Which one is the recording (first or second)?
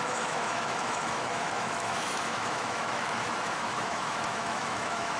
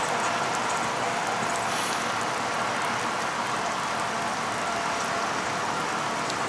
second